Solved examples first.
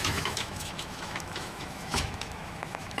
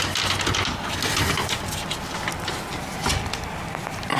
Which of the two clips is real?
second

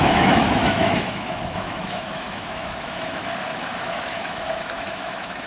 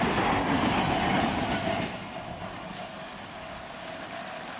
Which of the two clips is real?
second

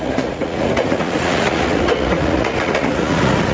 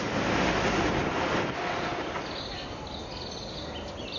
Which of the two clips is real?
second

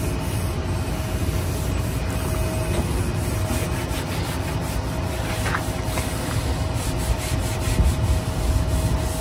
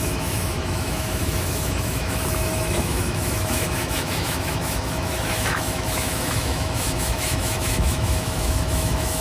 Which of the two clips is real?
first